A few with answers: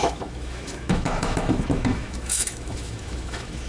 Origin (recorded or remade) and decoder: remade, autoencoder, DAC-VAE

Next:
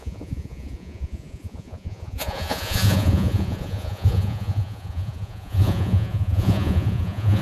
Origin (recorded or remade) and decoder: remade, vocoder, Vocos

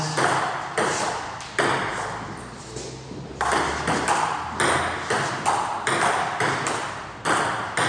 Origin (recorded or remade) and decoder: recorded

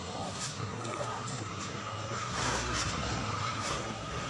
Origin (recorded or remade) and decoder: remade, codec, SNAC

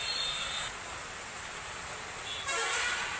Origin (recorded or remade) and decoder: recorded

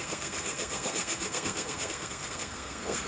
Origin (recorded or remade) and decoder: remade, codec, SNAC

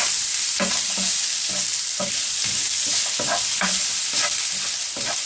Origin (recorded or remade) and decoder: recorded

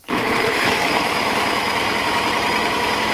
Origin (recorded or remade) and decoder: remade, autoencoder, DAC-VAE